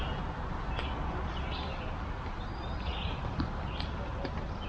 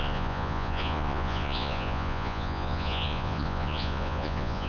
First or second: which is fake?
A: second